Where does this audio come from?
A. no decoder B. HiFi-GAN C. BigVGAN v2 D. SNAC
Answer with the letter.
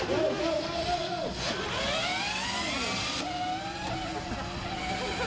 A